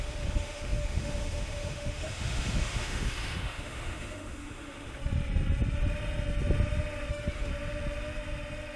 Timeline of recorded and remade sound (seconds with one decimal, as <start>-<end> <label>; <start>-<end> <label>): 0.0-5.0 remade; 5.0-7.1 recorded; 7.1-7.5 remade; 7.5-8.8 recorded